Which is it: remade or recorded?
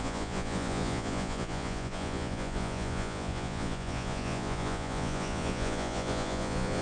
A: remade